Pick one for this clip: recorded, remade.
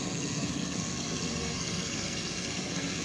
remade